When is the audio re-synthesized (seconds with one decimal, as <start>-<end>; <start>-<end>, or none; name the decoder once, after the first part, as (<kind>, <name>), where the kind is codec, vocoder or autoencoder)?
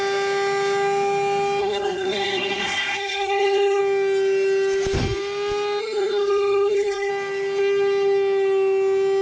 1.6-3.8 (codec, SNAC); 5.8-7.1